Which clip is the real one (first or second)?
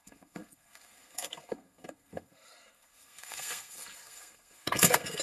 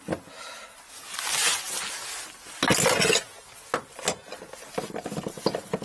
second